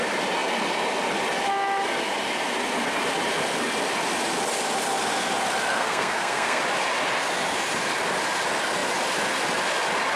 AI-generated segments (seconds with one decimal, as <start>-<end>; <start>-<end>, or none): 5.7-6.6

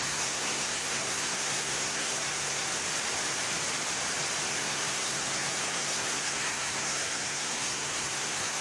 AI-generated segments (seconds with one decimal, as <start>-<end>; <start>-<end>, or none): 0.0-2.7; 4.5-8.6

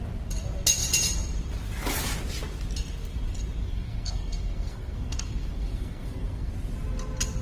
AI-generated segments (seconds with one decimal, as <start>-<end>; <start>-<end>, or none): 3.6-6.5

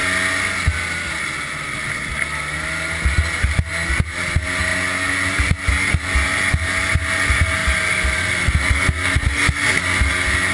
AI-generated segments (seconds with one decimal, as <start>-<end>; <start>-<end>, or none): none

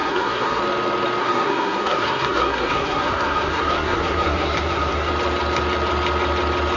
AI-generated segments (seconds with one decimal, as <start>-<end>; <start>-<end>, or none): 0.0-0.6; 1.2-5.1

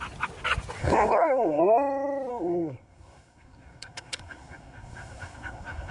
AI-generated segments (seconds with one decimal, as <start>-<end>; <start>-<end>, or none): 0.8-1.6; 2.3-5.9

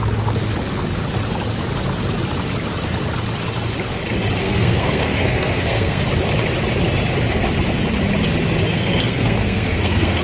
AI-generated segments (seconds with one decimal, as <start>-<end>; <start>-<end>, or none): 4.4-6.0; 8.7-10.2

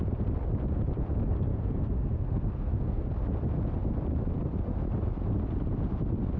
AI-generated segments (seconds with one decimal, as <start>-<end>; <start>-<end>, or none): 1.5-3.1